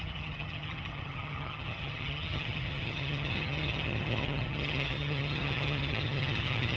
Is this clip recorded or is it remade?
remade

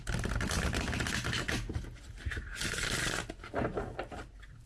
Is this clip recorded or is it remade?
recorded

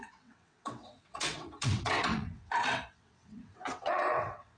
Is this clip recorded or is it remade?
remade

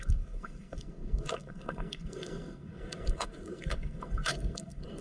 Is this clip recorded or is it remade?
remade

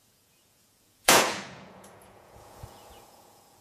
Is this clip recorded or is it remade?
remade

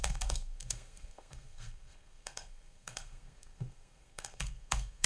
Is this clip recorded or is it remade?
remade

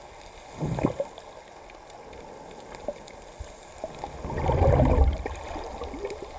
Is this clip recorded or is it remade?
recorded